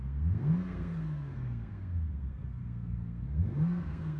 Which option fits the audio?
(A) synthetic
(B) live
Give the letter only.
A